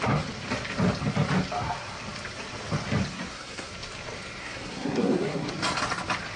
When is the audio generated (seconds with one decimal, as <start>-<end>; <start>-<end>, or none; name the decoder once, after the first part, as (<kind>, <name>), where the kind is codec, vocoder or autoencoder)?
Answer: 3.1-3.7 (codec, SNAC); 4.4-5.5